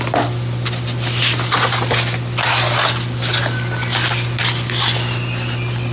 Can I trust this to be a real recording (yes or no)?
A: yes